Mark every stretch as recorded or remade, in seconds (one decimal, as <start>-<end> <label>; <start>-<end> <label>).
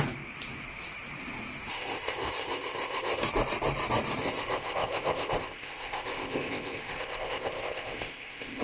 0.0-1.7 recorded; 1.7-3.2 remade; 3.2-4.2 recorded; 4.2-8.6 remade